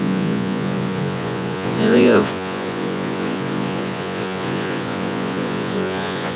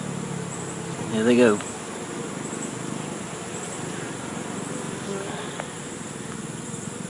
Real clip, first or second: second